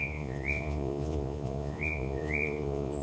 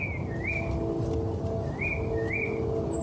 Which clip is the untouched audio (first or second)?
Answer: second